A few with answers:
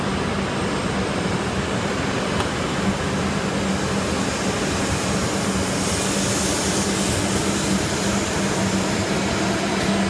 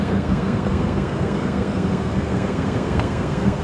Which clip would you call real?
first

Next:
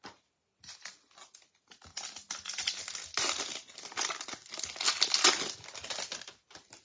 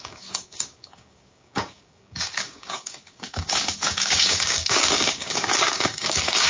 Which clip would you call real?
first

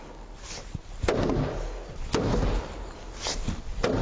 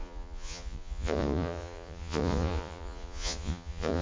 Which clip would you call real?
first